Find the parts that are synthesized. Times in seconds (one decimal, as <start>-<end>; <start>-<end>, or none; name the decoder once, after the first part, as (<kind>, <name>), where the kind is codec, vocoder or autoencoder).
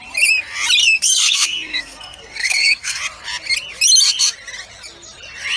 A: 0.8-3.0 (codec, SNAC)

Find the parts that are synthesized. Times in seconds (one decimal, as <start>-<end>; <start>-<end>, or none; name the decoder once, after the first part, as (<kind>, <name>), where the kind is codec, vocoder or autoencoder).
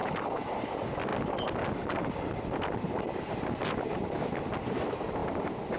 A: 0.0-1.1 (vocoder, BigVGAN v2); 4.6-5.2